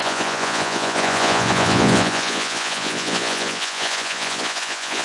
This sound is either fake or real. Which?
fake